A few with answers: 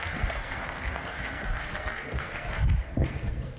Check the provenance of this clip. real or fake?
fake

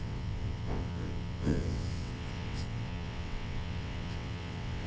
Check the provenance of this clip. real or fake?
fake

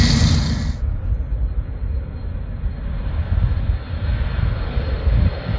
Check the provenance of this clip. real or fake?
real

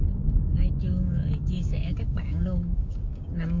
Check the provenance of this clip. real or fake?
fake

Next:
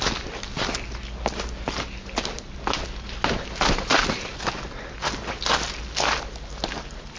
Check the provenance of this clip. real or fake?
real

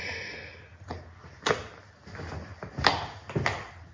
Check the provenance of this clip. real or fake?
real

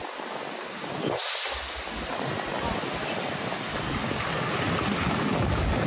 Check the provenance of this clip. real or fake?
real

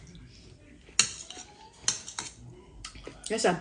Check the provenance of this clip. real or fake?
real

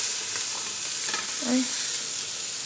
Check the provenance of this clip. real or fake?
real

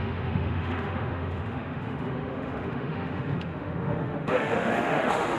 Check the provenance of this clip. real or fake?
fake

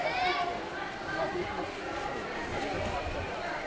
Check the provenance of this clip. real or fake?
real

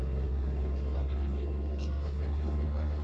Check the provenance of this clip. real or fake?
fake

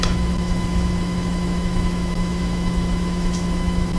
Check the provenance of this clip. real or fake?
fake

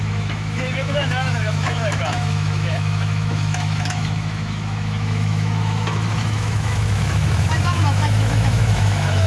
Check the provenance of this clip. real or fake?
fake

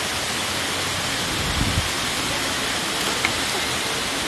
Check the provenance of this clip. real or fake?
real